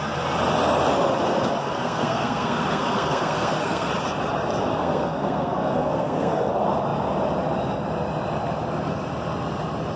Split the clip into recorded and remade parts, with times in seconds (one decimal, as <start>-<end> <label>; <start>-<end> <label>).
0.0-1.6 recorded; 1.6-3.9 remade; 3.9-4.7 recorded; 4.7-6.5 remade; 6.5-10.0 recorded